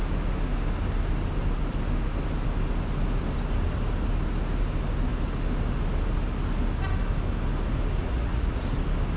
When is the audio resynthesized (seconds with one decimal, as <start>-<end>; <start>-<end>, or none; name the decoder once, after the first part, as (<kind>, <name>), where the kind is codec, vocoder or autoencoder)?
8.0-8.6 (vocoder, Vocos)